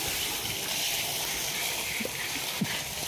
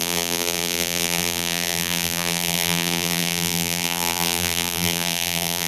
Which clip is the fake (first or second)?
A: second